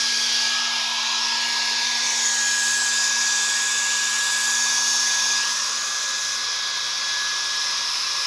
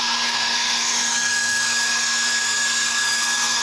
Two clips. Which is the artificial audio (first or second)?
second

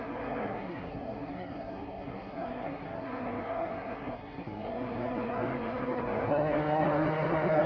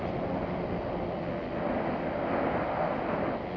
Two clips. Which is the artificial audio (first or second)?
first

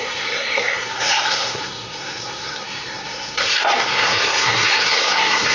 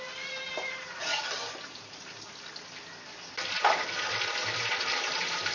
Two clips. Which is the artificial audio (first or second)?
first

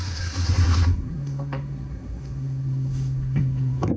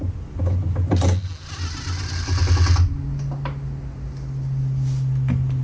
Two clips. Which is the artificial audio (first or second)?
first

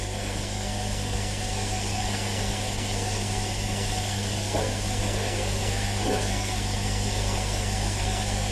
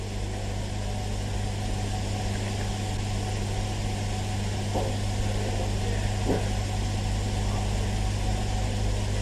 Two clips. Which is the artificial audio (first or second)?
first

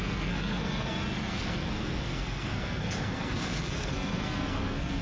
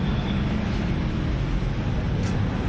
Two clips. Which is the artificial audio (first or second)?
first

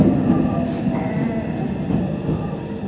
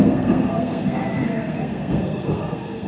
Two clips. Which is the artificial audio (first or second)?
second